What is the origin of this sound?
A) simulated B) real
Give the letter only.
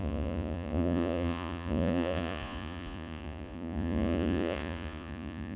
A